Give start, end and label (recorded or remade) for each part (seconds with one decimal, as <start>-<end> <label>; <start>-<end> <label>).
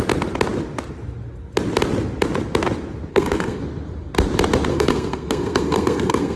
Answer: 0.0-3.1 recorded; 3.1-3.6 remade; 3.6-4.7 recorded; 4.7-6.4 remade